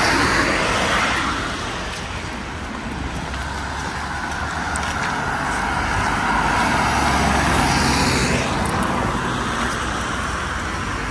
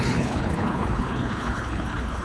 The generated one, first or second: second